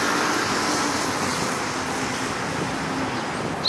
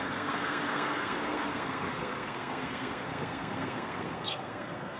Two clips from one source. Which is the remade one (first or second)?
second